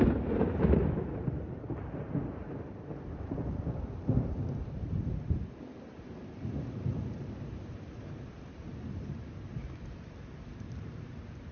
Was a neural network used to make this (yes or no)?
yes